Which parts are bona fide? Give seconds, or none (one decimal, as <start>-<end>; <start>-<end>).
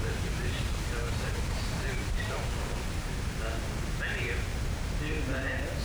0.0-0.4; 3.1-4.5